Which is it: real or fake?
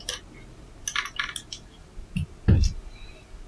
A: real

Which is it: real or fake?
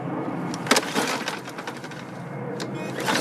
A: real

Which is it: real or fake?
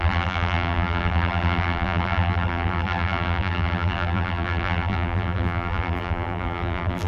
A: fake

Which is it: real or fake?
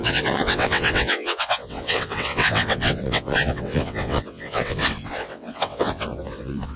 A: fake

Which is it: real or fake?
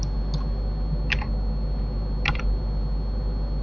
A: real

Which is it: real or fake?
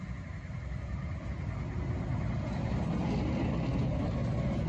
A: real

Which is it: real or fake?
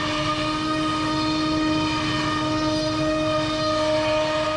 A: real